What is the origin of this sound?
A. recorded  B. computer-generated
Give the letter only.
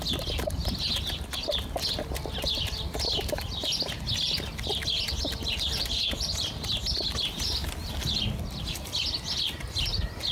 A